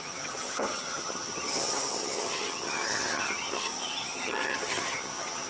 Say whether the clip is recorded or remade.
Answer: remade